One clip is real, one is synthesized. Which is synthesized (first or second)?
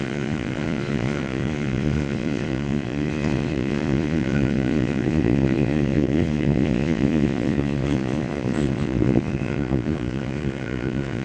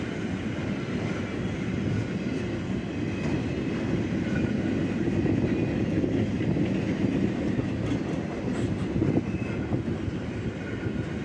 first